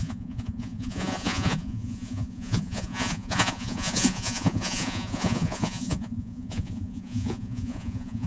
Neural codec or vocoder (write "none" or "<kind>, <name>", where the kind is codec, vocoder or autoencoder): vocoder, Vocos